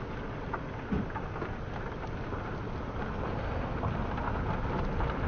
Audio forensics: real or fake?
real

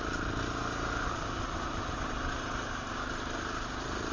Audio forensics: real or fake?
real